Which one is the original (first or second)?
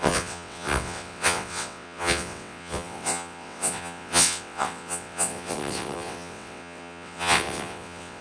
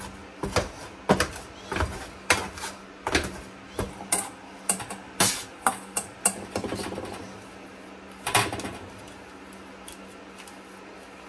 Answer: second